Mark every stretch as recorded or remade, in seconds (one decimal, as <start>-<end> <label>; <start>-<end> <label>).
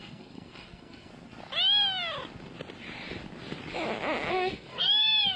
0.0-1.1 remade; 1.1-4.3 recorded; 4.3-5.4 remade